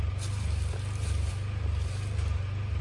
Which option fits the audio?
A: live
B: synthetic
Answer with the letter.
A